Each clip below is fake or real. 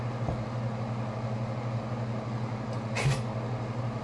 real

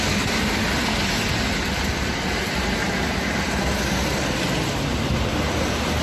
real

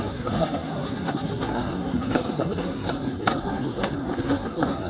fake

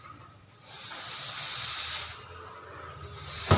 real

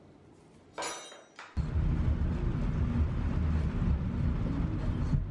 real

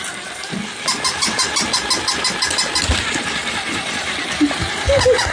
real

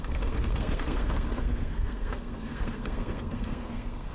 fake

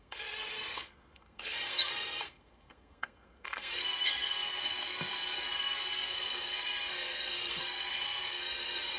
fake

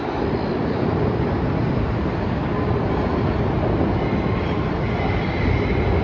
real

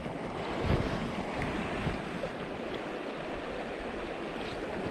real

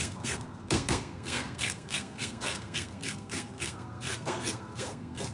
fake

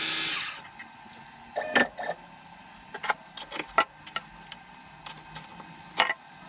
real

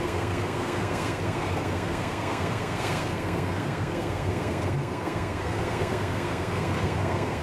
fake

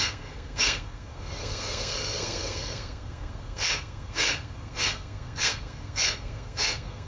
fake